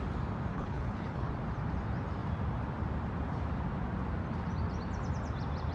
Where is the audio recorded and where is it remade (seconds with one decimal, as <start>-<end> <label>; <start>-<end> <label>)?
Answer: 0.0-0.5 recorded; 0.5-1.3 remade; 1.3-5.7 recorded